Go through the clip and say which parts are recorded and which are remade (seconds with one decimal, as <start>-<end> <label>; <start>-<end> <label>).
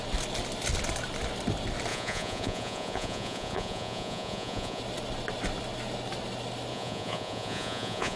0.0-1.9 recorded; 1.9-4.8 remade; 4.8-6.7 recorded; 6.7-8.2 remade